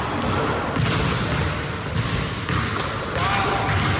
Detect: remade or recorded recorded